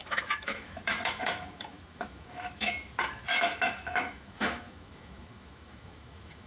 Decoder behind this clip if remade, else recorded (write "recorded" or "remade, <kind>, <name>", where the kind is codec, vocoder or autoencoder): remade, autoencoder, DAC-VAE